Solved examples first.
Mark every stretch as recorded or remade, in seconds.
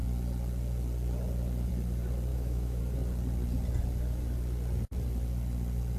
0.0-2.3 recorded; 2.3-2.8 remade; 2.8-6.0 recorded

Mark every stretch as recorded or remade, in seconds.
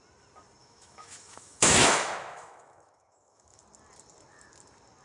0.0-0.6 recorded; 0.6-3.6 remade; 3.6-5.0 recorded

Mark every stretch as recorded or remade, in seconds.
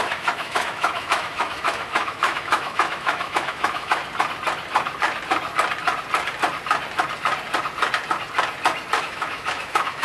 0.0-4.0 remade; 4.0-9.0 recorded; 9.0-10.0 remade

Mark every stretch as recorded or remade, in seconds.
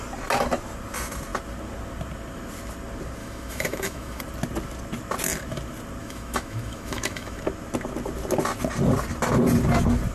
0.0-3.2 recorded; 3.2-4.2 remade; 4.2-6.0 recorded; 6.0-7.4 remade; 7.4-10.1 recorded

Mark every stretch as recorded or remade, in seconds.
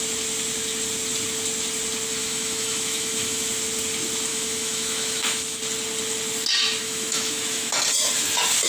0.0-2.2 recorded; 2.2-3.5 remade; 3.5-4.3 recorded; 4.3-5.6 remade; 5.6-6.8 recorded; 6.8-7.7 remade; 7.7-8.7 recorded